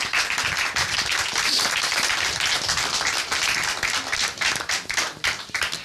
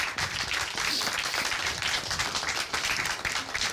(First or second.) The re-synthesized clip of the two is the second